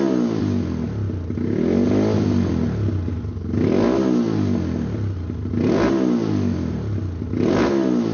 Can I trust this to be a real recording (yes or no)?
yes